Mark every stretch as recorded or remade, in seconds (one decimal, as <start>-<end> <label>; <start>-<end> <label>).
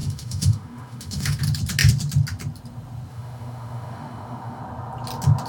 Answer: 0.0-1.4 remade; 1.4-3.1 recorded; 3.1-4.6 remade; 4.6-5.5 recorded